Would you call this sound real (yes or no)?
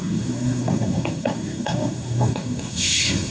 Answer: no